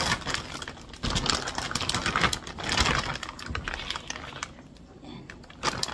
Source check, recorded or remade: recorded